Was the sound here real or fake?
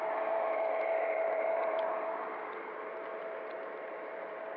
fake